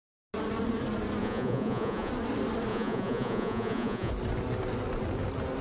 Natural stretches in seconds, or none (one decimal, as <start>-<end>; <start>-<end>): 0.0-1.2; 2.1-2.7; 4.1-5.6